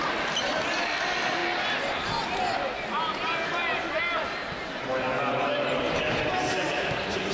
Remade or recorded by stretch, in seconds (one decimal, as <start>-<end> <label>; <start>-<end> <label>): 0.0-7.3 recorded